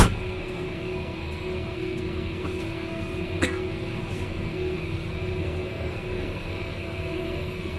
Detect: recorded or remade remade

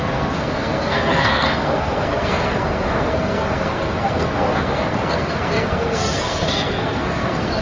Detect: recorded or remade remade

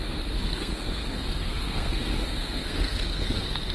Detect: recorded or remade remade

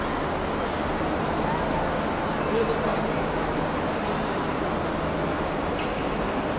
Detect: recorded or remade recorded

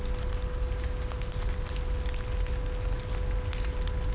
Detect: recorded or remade recorded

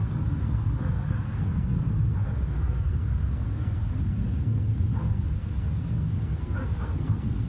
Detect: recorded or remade remade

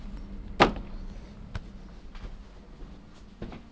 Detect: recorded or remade recorded